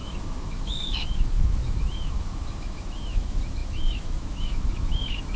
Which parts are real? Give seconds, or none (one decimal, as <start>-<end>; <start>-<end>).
none

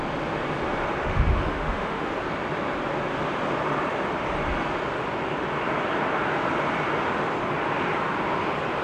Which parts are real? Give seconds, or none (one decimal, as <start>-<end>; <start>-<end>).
0.0-1.0; 2.1-8.8